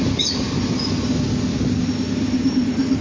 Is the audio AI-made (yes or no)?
no